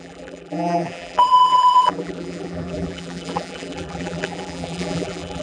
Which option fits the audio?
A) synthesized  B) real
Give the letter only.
A